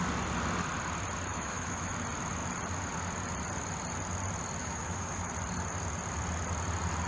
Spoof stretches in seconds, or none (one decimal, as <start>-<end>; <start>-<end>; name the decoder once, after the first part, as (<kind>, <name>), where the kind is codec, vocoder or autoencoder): 1.3-1.9 (autoencoder, DAC-VAE); 4.6-5.3